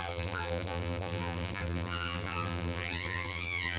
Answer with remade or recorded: remade